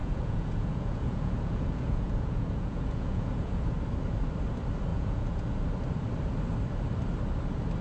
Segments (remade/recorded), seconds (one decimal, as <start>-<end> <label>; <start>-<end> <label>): 0.0-3.7 remade; 3.7-4.9 recorded; 4.9-5.5 remade; 5.5-7.8 recorded